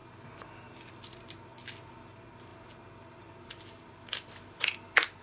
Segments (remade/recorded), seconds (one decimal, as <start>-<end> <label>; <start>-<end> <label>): 0.0-5.2 recorded